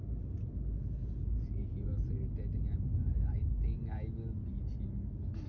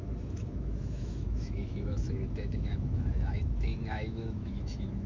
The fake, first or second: second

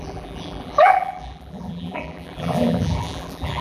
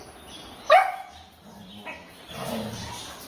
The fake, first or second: first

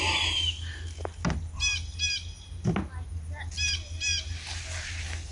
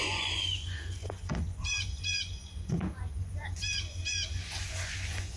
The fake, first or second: second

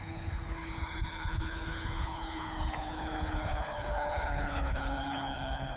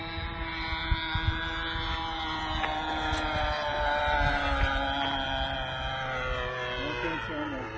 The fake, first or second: first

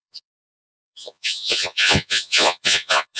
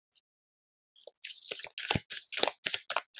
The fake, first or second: first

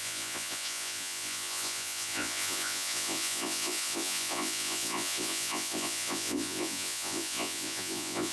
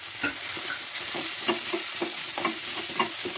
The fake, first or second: first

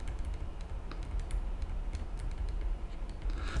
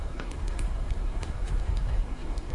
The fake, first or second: second